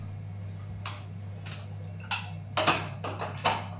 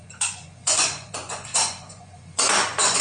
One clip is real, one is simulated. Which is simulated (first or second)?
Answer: second